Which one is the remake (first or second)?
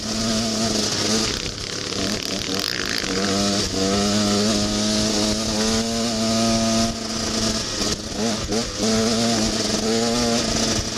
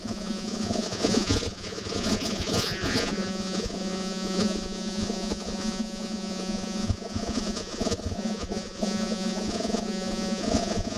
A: second